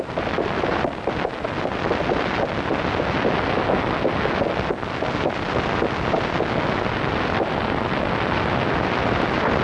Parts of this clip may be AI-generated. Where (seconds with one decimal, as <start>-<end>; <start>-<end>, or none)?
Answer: none